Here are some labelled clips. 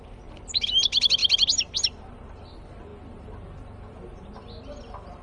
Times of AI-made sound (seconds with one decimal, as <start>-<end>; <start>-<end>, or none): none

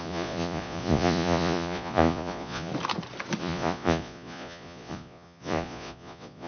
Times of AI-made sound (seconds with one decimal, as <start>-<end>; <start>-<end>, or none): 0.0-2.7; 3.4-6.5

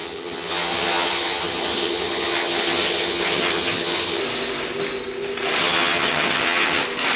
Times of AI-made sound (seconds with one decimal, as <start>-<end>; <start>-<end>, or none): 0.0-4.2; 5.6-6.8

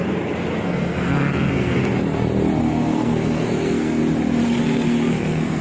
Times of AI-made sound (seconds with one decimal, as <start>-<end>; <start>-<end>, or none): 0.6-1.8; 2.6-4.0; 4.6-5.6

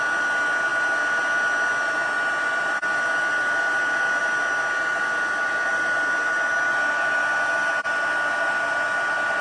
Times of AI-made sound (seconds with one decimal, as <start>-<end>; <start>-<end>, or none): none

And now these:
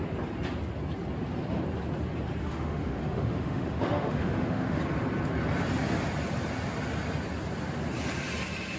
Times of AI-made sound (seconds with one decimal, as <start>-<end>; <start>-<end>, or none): 2.4-4.8

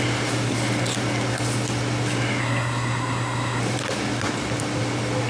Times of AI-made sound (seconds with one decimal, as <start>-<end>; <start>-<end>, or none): 2.4-3.6

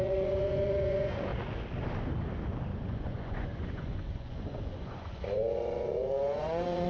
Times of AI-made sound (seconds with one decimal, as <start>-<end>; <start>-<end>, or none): 0.0-1.3; 2.7-6.9